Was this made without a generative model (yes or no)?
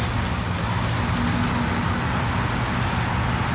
yes